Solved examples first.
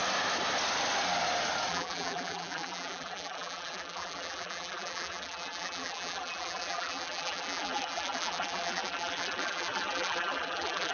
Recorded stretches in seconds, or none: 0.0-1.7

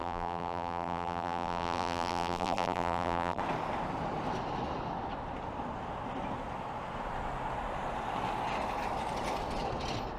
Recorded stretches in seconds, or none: 3.4-10.2

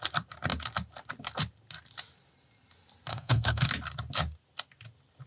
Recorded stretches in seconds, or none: 0.0-3.1; 3.7-5.3

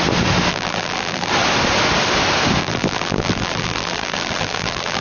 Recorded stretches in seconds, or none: 0.0-0.5; 1.3-2.6